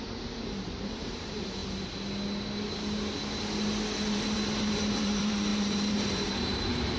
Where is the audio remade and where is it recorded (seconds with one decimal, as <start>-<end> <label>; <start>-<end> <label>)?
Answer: 0.0-1.6 remade; 1.6-4.1 recorded; 4.1-7.0 remade